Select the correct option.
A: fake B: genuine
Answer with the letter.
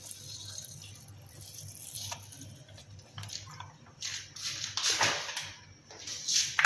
B